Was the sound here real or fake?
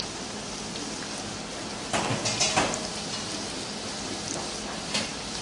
real